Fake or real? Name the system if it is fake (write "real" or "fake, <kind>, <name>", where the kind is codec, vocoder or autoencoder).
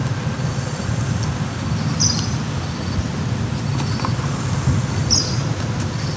real